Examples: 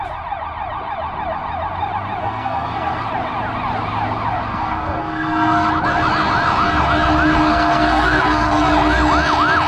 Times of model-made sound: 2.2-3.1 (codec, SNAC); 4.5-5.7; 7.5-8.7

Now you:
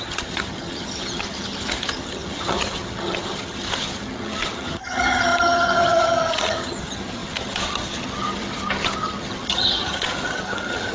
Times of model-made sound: 0.0-10.9 (vocoder, HiFi-GAN)

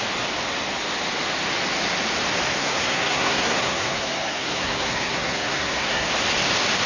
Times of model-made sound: 2.6-6.1 (codec, SNAC)

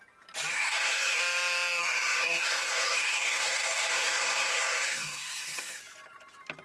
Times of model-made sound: 0.5-1.2 (codec, SNAC); 1.8-5.8